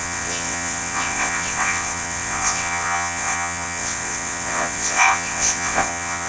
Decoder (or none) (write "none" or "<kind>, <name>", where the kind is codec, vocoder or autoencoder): vocoder, WaveNeXt